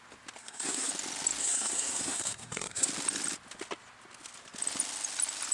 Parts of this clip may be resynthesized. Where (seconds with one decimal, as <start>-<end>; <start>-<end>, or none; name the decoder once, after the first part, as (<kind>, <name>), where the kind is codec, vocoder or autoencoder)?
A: 0.4-0.9 (codec, SNAC); 1.4-2.9